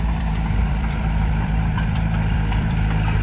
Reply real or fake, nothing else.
fake